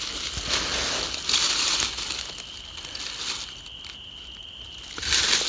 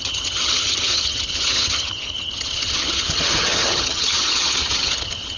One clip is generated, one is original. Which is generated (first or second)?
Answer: second